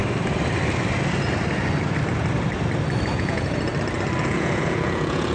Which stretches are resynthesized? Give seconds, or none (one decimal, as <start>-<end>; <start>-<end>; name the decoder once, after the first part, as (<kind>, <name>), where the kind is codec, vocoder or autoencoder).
3.2-3.7 (vocoder, Vocos); 4.2-5.3